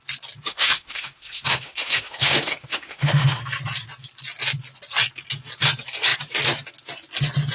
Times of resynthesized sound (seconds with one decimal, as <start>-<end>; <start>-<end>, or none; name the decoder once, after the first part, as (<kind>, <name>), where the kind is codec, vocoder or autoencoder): 0.5-3.4 (autoencoder, DAC-VAE)